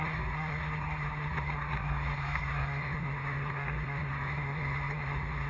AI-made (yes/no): yes